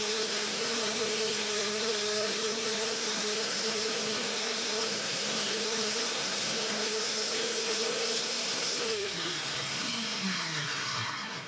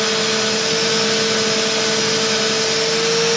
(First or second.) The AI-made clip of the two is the first